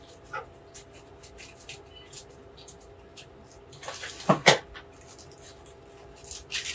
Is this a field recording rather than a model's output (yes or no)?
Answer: yes